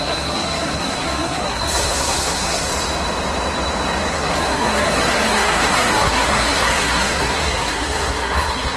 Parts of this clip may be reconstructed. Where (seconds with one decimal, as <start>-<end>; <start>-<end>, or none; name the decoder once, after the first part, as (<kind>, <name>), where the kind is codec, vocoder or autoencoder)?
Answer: 0.0-2.7 (codec, SNAC); 4.1-8.8

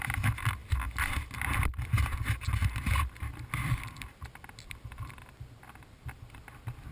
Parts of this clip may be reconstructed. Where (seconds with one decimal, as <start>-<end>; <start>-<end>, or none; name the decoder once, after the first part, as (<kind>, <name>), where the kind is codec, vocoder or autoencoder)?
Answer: none

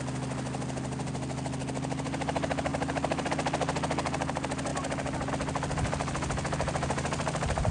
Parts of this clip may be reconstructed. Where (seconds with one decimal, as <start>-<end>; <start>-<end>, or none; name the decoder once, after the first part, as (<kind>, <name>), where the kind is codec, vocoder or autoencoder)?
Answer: none

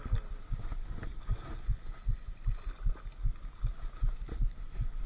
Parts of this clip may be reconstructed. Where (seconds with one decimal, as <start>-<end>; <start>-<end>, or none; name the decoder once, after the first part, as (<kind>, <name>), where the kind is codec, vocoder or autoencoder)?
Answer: none

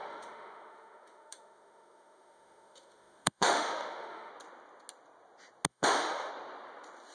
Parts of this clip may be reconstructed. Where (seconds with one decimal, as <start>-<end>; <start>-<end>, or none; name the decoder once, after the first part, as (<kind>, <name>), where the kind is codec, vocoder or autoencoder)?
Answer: 0.0-4.3 (autoencoder, DAC-VAE); 5.7-6.3